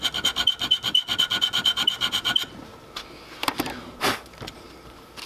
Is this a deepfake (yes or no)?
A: no